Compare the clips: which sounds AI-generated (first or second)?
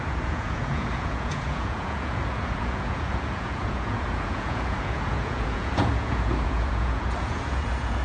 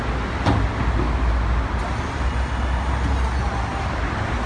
first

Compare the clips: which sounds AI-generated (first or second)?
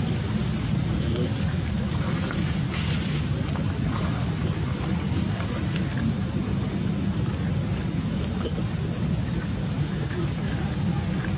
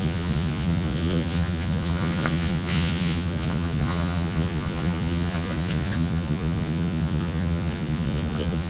second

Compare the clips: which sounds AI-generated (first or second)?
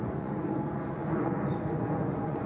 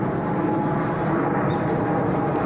first